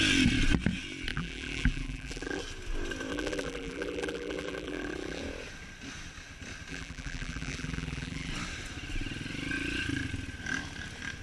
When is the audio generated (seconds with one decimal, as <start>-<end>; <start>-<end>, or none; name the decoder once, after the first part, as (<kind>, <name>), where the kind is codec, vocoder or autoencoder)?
1.1-2.4 (vocoder, BigVGAN v2); 3.1-5.2; 6.7-8.3